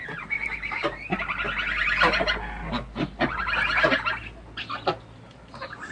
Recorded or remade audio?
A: recorded